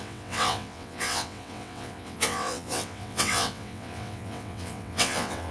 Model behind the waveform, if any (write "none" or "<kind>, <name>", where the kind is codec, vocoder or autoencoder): vocoder, WaveNeXt